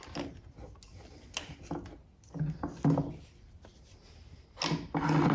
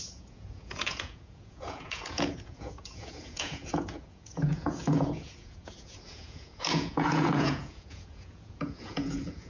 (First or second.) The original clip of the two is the first